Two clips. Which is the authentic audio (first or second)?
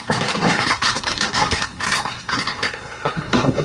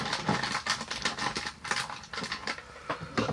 second